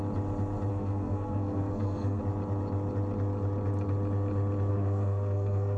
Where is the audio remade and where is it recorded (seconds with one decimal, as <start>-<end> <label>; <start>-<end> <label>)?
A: 0.0-0.7 recorded; 0.7-2.2 remade; 2.2-4.7 recorded; 4.7-5.8 remade